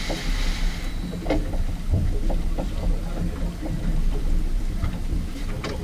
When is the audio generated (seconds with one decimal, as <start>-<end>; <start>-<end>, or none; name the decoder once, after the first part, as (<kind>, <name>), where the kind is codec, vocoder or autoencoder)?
3.9-5.3 (vocoder, BigVGAN v2)